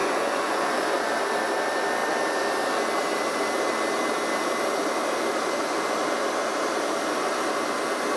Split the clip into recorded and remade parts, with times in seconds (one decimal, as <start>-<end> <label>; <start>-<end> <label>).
0.0-1.1 remade; 1.1-8.2 recorded